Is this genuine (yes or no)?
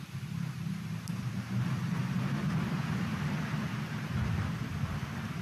no